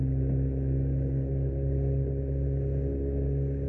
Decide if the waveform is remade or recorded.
recorded